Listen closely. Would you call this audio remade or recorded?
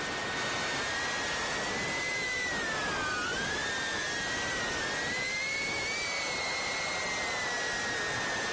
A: recorded